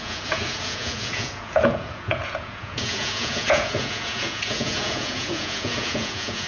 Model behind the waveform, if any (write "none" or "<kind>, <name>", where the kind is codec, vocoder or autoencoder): vocoder, Vocos